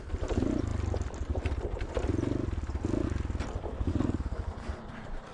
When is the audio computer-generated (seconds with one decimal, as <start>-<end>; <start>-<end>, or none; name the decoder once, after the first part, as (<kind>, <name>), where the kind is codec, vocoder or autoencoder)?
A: none